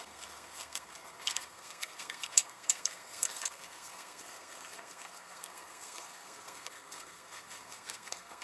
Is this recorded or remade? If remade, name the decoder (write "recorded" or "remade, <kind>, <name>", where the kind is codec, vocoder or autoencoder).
remade, codec, SNAC